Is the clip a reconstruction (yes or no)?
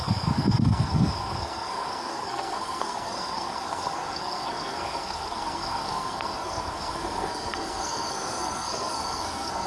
yes